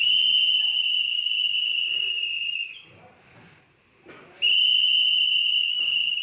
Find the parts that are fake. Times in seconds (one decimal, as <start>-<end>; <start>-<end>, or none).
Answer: none